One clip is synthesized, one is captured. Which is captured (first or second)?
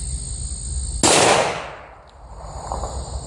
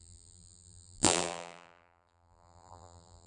first